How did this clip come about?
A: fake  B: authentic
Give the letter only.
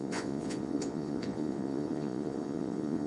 A